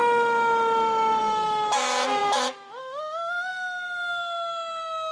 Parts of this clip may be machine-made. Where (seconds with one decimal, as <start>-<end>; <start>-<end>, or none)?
1.2-5.1